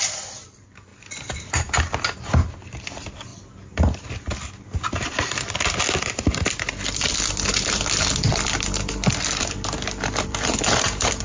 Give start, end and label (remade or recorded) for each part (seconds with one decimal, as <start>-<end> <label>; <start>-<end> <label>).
0.0-0.9 remade; 0.9-2.0 recorded; 2.0-3.3 remade; 3.3-4.8 recorded; 4.8-11.2 remade